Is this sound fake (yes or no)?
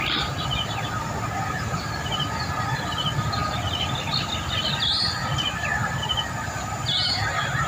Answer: no